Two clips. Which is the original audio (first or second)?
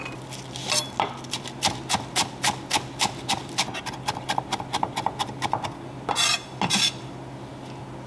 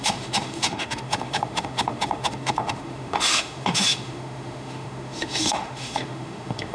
first